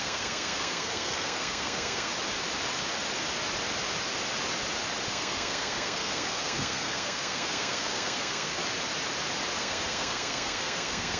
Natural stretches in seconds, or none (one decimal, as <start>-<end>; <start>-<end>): 2.1-5.1; 8.6-9.6